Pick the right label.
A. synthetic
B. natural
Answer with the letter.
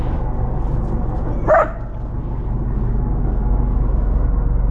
B